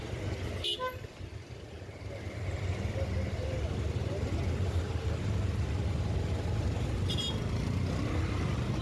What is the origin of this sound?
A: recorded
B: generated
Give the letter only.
A